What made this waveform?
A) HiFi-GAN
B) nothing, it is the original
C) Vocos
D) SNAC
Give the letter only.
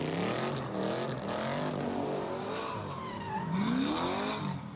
B